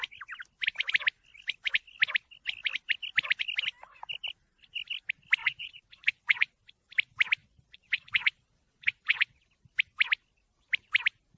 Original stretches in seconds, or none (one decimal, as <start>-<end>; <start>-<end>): 0.0-5.4; 6.5-7.4; 9.4-11.4